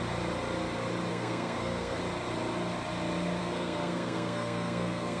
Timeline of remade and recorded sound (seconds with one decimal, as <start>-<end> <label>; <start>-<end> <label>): 0.0-1.1 recorded; 1.1-2.0 remade; 2.0-3.4 recorded; 3.4-5.2 remade